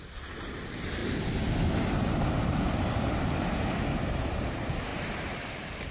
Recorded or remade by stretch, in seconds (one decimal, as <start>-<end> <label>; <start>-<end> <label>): 0.0-5.9 recorded